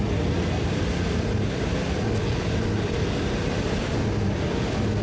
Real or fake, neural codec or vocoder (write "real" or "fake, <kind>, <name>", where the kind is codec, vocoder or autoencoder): real